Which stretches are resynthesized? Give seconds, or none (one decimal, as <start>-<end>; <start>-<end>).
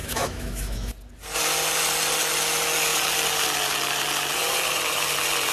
0.0-0.9